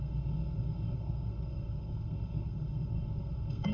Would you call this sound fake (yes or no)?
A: yes